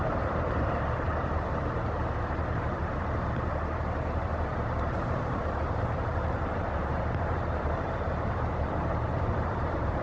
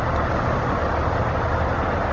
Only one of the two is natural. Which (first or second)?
second